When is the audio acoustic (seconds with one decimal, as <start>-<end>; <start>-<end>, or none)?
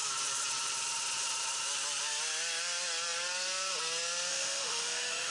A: 0.0-4.3